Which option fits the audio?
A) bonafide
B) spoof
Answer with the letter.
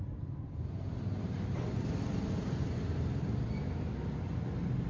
A